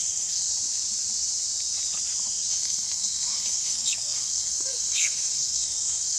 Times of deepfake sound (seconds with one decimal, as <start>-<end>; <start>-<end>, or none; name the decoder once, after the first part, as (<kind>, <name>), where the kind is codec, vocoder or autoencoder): 0.0-0.5 (codec, SNAC); 2.5-6.2